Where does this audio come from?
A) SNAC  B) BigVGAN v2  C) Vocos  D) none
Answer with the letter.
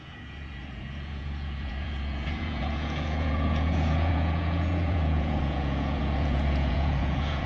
C